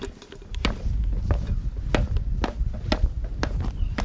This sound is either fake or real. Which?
real